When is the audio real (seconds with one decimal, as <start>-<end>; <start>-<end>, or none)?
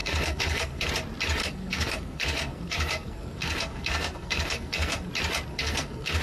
0.9-1.4; 5.1-5.5